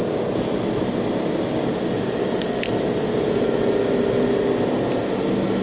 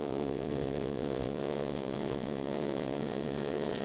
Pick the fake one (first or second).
second